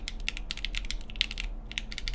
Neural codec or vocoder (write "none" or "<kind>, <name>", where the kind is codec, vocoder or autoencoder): none